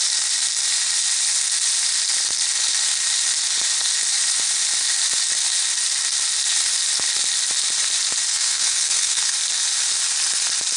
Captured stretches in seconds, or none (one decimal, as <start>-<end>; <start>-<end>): 0.0-8.3; 9.3-10.8